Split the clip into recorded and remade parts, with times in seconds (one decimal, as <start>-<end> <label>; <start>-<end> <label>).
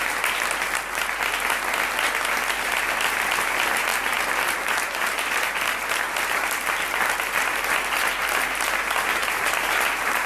0.0-10.3 recorded